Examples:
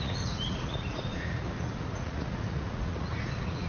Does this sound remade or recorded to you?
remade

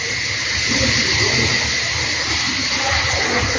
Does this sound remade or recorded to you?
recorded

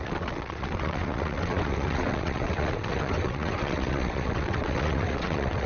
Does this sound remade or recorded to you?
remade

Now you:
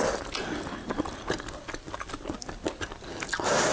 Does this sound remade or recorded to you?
recorded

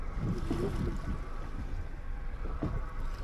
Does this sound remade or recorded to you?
recorded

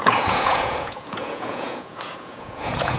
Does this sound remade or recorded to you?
remade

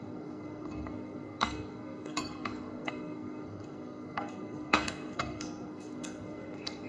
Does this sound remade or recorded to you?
remade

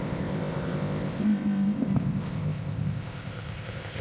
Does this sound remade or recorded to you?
remade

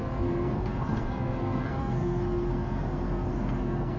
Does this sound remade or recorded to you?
remade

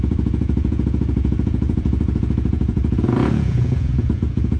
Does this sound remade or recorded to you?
remade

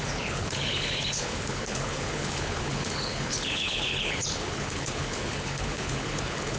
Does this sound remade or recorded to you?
remade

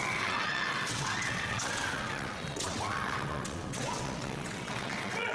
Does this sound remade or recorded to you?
remade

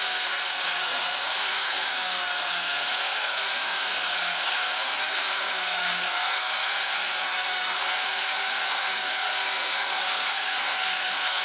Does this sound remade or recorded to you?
remade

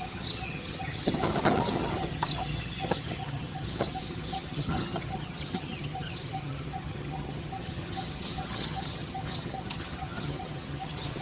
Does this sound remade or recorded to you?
remade